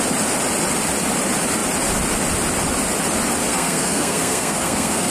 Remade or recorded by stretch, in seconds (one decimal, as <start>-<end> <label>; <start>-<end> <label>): 0.0-3.5 recorded; 3.5-5.1 remade